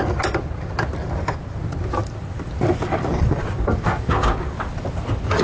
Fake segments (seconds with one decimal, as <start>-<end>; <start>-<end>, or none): 2.0-5.4

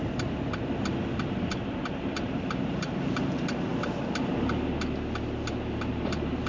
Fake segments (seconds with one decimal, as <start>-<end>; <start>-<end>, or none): 2.0-3.7; 5.9-6.5

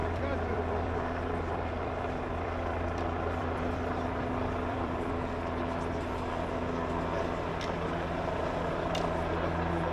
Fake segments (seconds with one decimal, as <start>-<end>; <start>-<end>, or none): 0.0-5.1

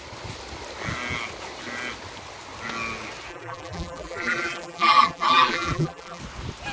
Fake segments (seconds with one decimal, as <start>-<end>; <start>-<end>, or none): 3.3-6.2